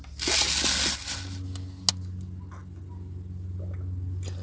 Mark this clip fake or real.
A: real